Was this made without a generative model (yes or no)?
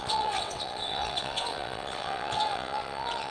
no